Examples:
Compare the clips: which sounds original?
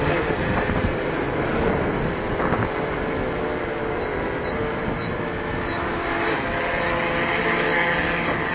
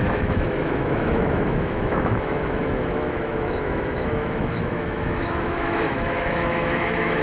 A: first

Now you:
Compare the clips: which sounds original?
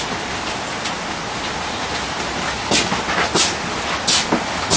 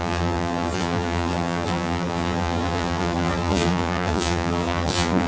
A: first